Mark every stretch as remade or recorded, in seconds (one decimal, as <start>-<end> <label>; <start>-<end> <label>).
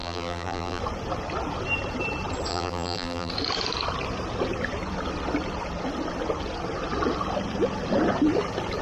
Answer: 0.0-0.8 remade; 0.8-2.5 recorded; 2.5-3.3 remade; 3.3-8.8 recorded